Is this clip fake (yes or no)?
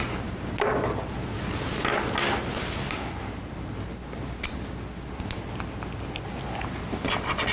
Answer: no